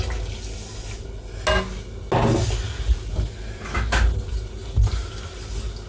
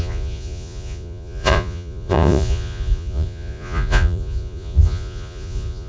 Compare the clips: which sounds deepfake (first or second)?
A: second